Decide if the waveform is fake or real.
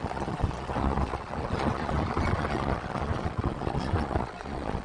fake